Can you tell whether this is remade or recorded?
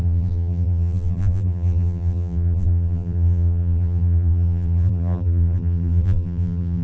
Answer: remade